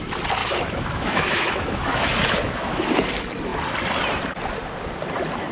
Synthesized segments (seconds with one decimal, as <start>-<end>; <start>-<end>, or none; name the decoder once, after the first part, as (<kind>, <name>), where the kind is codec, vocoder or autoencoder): 0.4-2.8 (autoencoder, DAC-VAE)